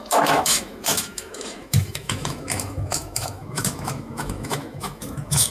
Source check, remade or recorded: remade